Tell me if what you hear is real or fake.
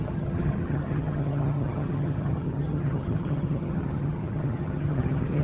fake